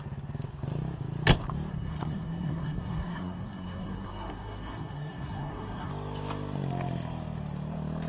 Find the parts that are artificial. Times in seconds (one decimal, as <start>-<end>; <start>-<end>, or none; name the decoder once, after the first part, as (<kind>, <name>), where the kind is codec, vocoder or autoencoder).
1.7-5.9 (codec, SNAC)